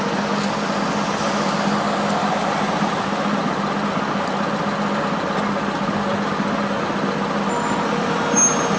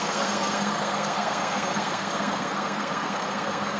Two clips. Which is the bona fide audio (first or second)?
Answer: first